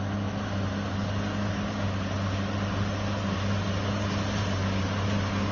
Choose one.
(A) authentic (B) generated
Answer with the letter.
A